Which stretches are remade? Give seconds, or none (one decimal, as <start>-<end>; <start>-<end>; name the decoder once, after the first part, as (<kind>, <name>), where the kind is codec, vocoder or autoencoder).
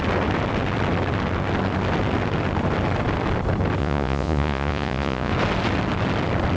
3.8-5.3 (vocoder, Vocos)